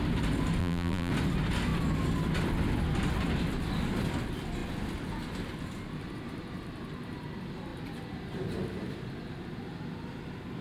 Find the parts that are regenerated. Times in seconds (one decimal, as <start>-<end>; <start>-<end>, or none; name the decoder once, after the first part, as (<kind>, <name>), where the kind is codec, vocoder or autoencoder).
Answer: 0.6-1.1 (vocoder, BigVGAN v2)